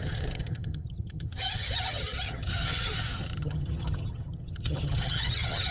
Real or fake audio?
fake